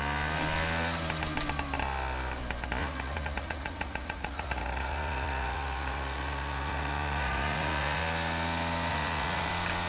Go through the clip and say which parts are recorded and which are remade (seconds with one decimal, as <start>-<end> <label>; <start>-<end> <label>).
0.0-2.8 recorded; 2.8-8.0 remade; 8.0-8.9 recorded; 8.9-9.5 remade; 9.5-9.9 recorded